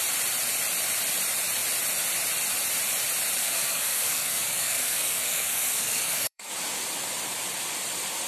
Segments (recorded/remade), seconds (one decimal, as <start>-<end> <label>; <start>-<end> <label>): 0.0-3.4 recorded; 3.4-6.5 remade; 6.5-8.3 recorded